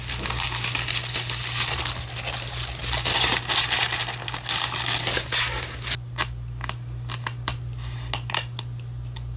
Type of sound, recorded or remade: recorded